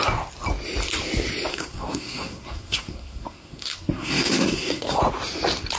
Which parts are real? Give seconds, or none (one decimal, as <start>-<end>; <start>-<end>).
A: 0.0-1.5; 5.0-5.8